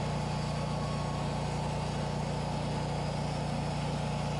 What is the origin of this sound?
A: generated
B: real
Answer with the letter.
B